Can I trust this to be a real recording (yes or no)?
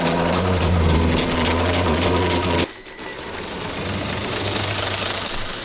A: yes